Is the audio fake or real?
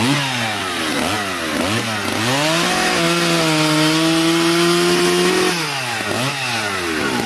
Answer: real